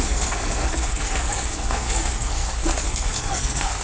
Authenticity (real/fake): fake